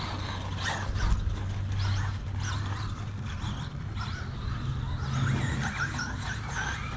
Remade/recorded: recorded